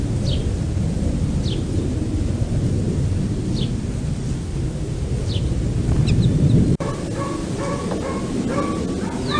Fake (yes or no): no